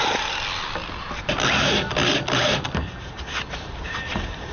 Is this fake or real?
real